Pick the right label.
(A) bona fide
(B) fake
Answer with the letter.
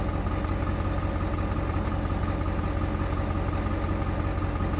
A